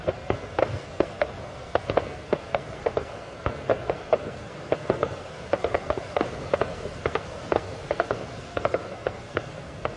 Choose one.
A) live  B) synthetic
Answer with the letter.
B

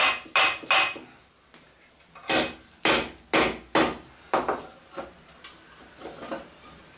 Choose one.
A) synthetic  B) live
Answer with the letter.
B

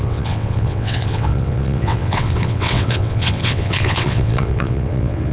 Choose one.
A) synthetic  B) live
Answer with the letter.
A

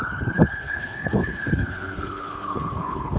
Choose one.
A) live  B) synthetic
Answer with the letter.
B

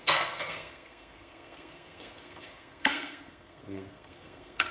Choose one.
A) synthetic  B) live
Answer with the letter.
A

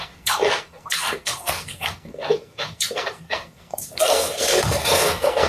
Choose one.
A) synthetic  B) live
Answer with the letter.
A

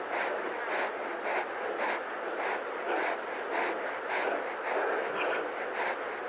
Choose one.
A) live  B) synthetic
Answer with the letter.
A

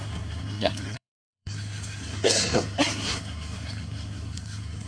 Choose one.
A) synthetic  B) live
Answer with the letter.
A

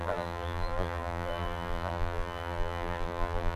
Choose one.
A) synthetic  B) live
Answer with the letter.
A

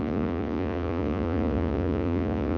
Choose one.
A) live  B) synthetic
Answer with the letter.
B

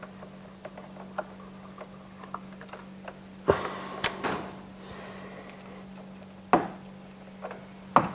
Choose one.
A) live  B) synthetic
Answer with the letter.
A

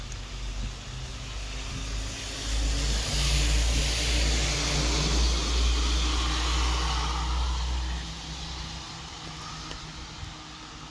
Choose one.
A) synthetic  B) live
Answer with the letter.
B